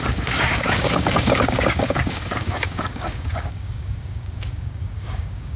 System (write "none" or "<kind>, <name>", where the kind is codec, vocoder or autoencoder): codec, DAC